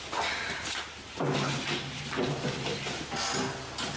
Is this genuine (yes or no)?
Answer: yes